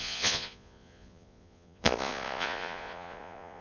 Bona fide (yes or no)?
no